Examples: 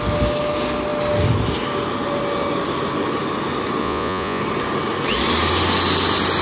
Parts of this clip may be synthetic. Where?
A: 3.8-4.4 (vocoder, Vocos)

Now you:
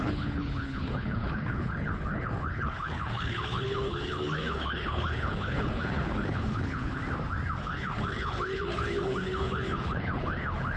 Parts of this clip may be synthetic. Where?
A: 0.0-7.0 (codec, HILCodec); 7.6-10.8

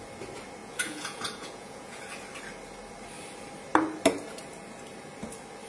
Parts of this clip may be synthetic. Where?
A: 0.6-2.0 (vocoder, Vocos)

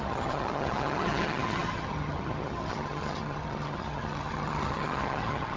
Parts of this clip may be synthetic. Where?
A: 0.0-5.6 (vocoder, HiFi-GAN)

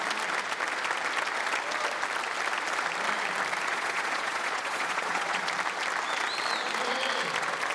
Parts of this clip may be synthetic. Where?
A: 3.7-5.4 (vocoder, Vocos)

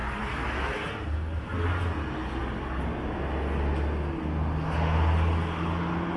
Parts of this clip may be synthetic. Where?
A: none

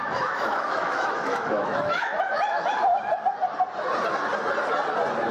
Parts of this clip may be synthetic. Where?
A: 0.0-3.2 (autoencoder, DAC-VAE)

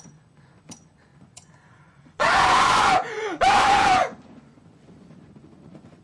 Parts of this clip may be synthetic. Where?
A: 0.0-6.0 (vocoder, Vocos)